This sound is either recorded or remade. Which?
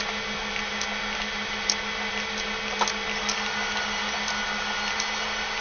recorded